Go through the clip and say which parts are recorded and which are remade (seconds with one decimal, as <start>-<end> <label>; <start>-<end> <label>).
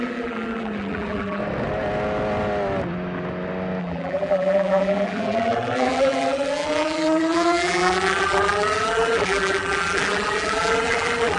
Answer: 0.0-1.4 remade; 1.4-3.8 recorded; 3.8-11.4 remade